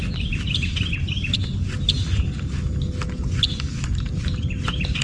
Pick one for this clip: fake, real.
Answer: real